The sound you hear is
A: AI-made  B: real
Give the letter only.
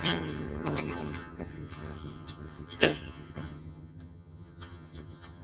A